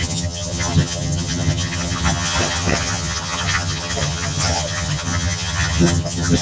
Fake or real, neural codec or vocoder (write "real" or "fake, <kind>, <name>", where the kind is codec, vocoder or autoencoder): fake, vocoder, HiFi-GAN